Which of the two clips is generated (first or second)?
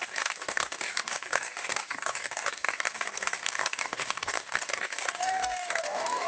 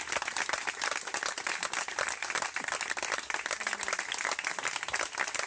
first